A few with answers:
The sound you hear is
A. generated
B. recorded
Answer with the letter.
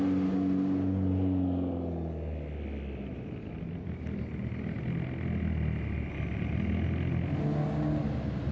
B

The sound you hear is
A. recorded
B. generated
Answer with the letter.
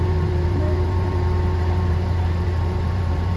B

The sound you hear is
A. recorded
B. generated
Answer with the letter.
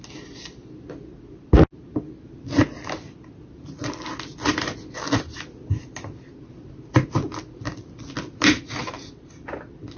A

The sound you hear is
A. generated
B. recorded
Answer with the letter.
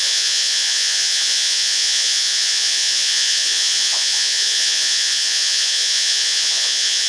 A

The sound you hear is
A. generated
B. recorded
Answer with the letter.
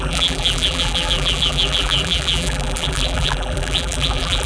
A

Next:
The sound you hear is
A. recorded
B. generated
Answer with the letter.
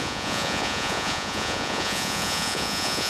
B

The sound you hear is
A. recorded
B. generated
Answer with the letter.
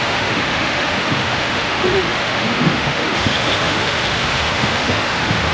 B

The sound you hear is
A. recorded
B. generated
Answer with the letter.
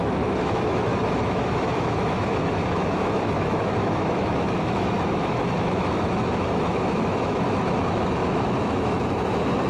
B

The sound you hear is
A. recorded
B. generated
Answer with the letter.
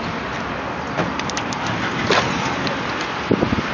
A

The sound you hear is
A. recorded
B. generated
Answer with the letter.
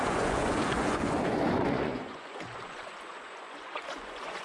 B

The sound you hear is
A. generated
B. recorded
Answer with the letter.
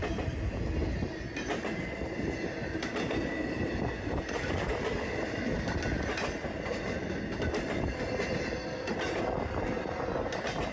B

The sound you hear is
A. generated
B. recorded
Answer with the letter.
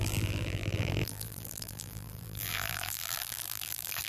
A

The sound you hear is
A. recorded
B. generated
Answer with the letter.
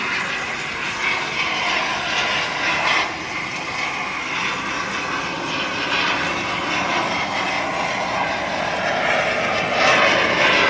A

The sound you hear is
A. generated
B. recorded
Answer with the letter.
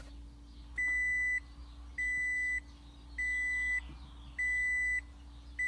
B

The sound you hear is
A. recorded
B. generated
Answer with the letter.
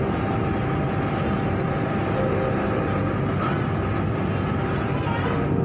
A